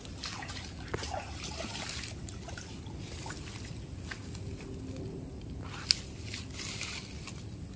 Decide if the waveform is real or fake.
real